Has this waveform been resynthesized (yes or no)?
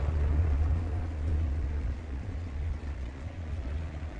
yes